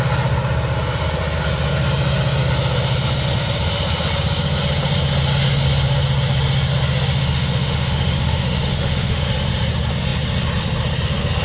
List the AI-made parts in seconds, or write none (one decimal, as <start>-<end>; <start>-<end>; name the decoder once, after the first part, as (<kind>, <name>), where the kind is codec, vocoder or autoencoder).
7.2-9.3 (autoencoder, DAC-VAE)